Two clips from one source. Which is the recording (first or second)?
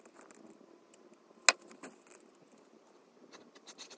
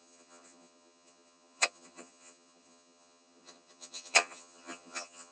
first